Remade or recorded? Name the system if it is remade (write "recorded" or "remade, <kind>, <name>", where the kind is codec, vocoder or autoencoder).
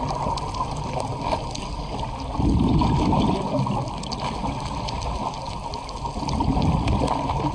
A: recorded